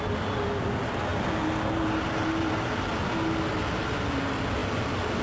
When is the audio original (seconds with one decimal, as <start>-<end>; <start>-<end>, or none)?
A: 0.0-5.2